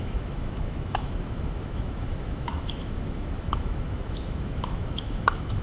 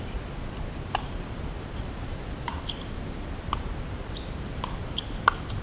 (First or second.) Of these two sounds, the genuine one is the second